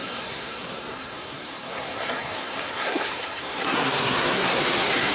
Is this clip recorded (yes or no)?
no